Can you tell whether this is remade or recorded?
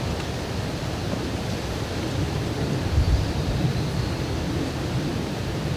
remade